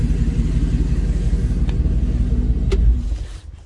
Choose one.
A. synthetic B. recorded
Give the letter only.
B